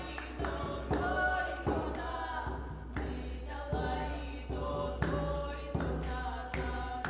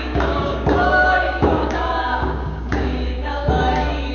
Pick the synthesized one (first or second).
second